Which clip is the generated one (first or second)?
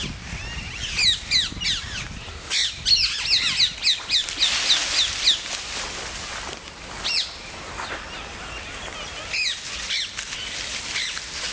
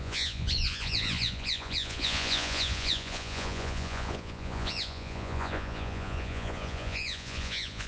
second